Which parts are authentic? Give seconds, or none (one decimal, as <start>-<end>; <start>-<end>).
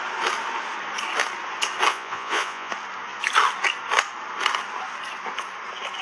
0.0-1.9; 2.7-6.0